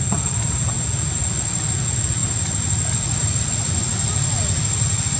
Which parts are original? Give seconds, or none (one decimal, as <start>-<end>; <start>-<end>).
0.0-5.2

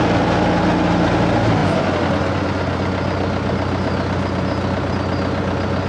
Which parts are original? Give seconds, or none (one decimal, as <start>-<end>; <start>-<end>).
0.0-5.9

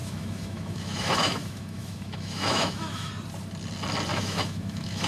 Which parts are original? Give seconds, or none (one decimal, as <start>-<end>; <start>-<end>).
3.1-4.1

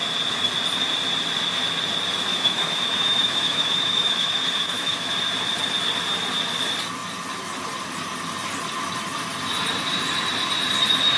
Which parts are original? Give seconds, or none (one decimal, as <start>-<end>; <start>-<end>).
0.0-2.3; 5.1-11.2

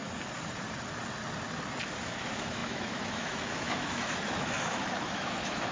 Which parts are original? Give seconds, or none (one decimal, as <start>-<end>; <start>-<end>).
0.0-2.0

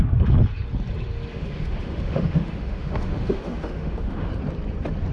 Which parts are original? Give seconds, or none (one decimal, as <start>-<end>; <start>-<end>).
0.0-1.3; 4.3-5.1

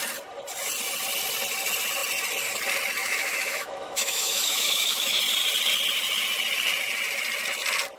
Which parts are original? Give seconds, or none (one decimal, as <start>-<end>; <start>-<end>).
0.0-3.0; 5.2-8.0